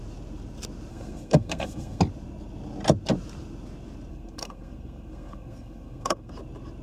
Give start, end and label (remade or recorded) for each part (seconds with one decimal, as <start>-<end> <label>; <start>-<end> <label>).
0.0-0.9 recorded; 0.9-2.0 remade; 2.0-4.1 recorded; 4.1-6.3 remade; 6.3-6.8 recorded